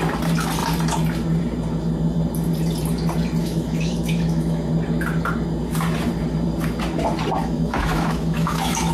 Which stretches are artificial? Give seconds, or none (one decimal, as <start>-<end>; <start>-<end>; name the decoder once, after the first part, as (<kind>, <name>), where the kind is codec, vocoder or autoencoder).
3.4-4.7 (autoencoder, DAC-VAE); 7.4-8.9

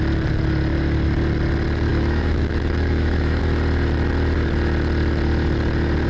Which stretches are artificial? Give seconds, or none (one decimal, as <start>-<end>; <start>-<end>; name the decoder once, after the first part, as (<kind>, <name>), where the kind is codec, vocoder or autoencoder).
1.9-3.4 (autoencoder, DAC-VAE)

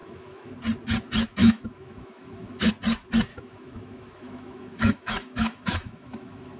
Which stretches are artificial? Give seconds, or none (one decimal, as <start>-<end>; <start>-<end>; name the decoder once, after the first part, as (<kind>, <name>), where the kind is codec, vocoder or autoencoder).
0.0-0.5 (autoencoder, DAC-VAE); 1.4-2.7; 3.3-6.6